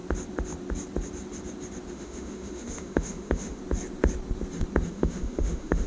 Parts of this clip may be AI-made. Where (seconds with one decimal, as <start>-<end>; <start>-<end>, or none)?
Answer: 1.9-3.6; 4.9-5.9